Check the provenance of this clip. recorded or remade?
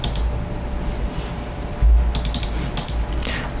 recorded